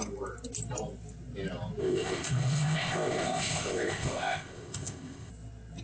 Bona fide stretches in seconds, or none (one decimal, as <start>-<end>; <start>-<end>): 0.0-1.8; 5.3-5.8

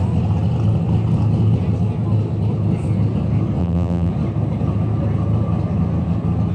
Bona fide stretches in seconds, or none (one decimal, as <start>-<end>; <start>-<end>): 0.0-3.6; 4.1-6.5

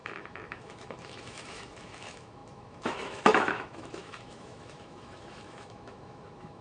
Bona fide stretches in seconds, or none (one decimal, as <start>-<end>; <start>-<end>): none

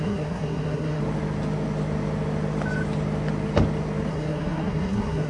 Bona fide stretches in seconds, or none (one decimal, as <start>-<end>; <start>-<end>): 1.0-4.1